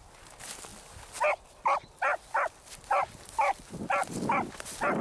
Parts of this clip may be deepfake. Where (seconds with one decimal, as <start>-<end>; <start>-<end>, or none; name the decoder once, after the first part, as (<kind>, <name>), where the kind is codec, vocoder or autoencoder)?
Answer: none